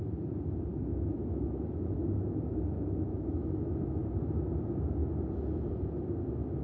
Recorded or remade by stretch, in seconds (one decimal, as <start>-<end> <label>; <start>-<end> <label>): 0.0-0.7 recorded; 0.7-4.0 remade; 4.0-6.6 recorded